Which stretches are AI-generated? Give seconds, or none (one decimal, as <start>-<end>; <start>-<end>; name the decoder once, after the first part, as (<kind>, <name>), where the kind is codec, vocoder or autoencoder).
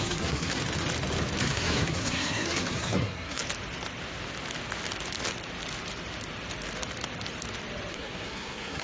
0.0-0.6 (codec, SNAC); 1.4-3.4; 7.9-8.8